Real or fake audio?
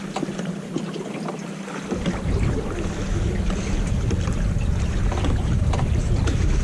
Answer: real